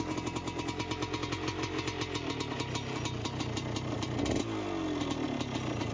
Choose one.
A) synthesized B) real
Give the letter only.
B